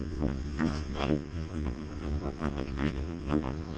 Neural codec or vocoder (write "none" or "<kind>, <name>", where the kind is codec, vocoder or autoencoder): vocoder, Vocos